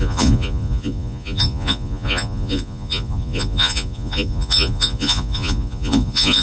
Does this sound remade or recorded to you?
remade